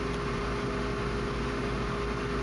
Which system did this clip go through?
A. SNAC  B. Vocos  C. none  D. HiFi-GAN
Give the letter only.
C